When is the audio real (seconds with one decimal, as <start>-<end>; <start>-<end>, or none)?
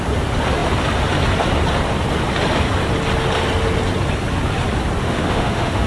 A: 0.0-5.0